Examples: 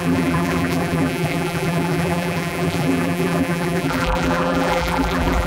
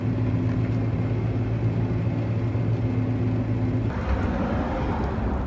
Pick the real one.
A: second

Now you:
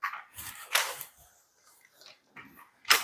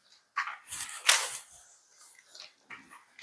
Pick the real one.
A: second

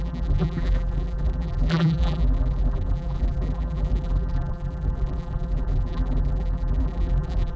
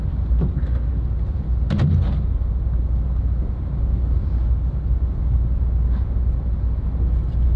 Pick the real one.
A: second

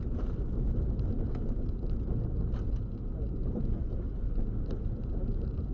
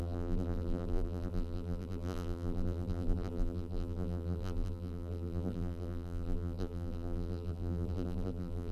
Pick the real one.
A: first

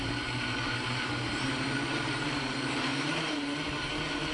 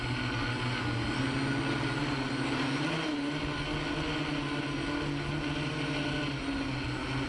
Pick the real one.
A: second